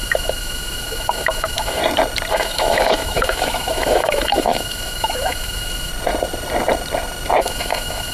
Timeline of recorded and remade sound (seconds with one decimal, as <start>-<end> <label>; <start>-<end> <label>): 0.0-1.8 remade; 1.8-2.3 recorded; 2.3-5.9 remade; 5.9-7.4 recorded; 7.4-8.1 remade